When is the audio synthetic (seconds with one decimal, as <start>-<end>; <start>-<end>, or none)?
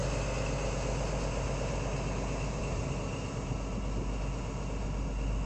none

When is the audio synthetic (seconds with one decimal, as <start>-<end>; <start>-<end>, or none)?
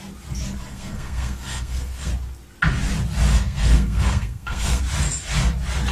0.7-2.1; 3.3-4.8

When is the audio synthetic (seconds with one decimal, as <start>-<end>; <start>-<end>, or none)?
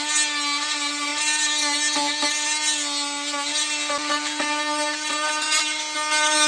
none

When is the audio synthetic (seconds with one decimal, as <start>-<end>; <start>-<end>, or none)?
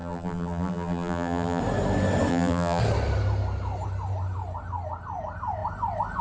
0.0-1.6; 2.3-2.8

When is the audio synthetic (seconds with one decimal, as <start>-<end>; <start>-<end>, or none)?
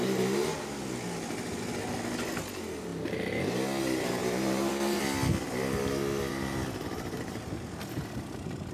4.2-5.0; 6.3-7.8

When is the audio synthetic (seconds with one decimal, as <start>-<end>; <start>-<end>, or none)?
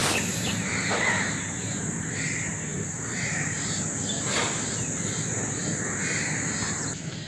0.0-2.0; 2.7-3.8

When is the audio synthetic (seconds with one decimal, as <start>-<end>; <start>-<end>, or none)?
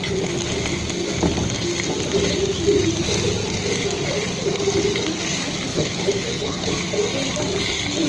5.7-6.7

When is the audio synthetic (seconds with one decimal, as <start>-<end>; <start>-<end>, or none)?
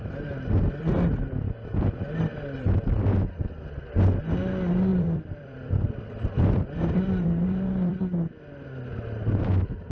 4.9-8.0